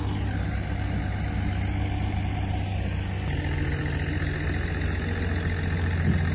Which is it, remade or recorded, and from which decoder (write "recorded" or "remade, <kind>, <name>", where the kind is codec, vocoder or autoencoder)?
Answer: recorded